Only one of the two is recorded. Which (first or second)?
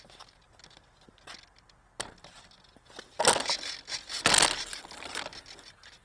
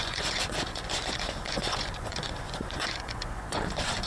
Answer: first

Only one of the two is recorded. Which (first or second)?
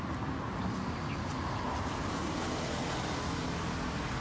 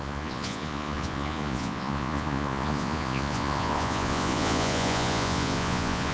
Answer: first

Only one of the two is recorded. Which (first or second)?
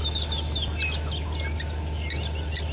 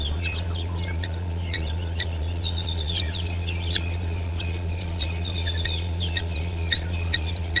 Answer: first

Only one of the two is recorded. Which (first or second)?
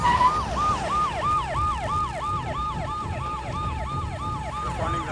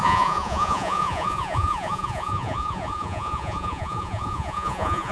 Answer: first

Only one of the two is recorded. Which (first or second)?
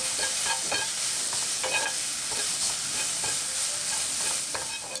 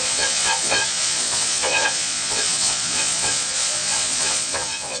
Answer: first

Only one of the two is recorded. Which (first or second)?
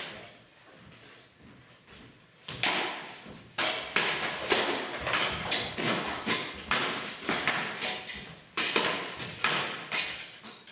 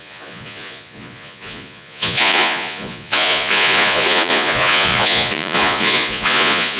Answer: first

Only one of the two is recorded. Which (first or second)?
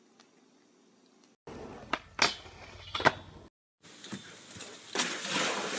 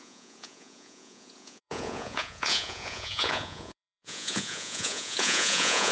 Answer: first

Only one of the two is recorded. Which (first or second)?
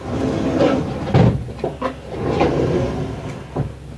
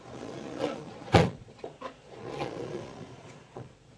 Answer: first